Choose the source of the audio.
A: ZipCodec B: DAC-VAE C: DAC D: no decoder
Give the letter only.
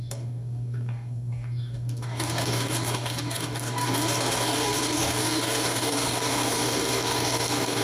C